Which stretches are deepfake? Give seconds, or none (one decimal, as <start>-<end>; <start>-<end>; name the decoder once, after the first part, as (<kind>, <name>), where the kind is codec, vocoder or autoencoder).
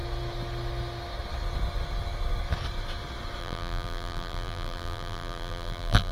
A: 3.4-6.1 (vocoder, BigVGAN v2)